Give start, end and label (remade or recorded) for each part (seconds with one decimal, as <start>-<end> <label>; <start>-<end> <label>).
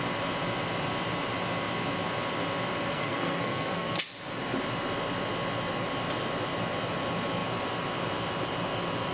0.0-2.9 recorded; 2.9-4.0 remade; 4.0-9.1 recorded